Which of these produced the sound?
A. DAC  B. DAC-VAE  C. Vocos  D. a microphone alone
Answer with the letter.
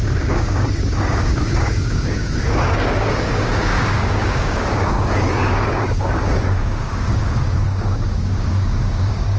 A